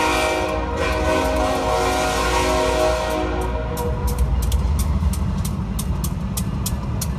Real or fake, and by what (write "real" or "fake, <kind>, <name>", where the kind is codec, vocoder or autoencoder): real